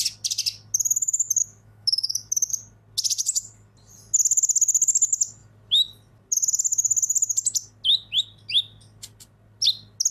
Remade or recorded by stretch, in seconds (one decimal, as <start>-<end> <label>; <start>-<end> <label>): 0.0-1.4 recorded; 1.4-2.5 remade; 2.5-10.1 recorded